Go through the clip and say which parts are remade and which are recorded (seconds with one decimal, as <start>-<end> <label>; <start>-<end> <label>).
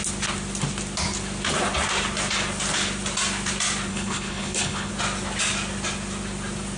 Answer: 0.0-3.9 recorded; 3.9-4.9 remade; 4.9-6.8 recorded